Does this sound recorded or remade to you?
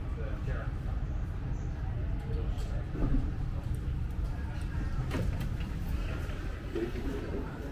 remade